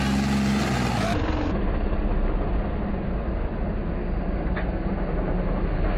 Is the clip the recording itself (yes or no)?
yes